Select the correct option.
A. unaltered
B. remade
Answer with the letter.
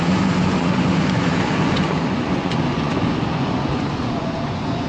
B